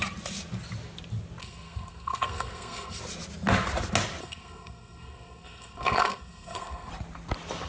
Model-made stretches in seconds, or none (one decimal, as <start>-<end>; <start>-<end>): 1.4-3.0; 4.2-6.9